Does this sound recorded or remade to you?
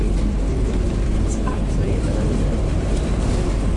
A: remade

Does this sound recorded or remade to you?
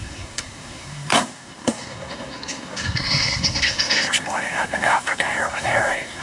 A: remade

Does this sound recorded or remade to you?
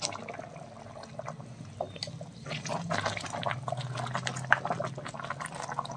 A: recorded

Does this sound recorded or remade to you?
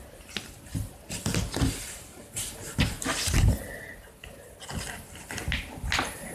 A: recorded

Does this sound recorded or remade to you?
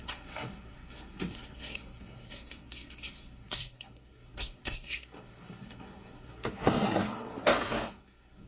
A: remade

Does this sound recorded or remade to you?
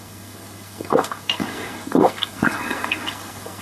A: remade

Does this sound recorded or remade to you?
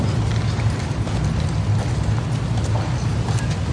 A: recorded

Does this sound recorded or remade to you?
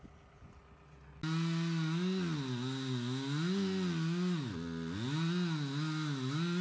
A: recorded